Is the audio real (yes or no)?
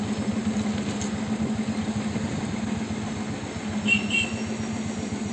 yes